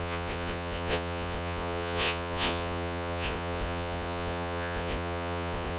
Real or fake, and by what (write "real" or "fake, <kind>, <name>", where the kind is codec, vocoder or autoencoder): fake, vocoder, Vocos